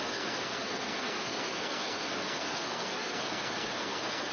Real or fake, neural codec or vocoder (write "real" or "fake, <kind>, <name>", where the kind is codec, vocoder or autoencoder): fake, codec, SNAC